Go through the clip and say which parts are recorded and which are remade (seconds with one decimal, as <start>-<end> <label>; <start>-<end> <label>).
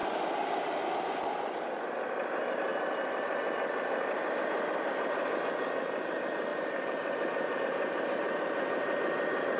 0.0-1.0 remade; 1.0-6.5 recorded; 6.5-7.6 remade; 7.6-9.6 recorded